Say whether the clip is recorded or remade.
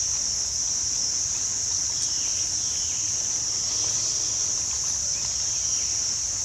recorded